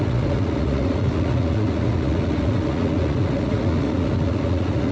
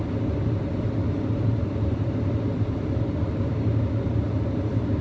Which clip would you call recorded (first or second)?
second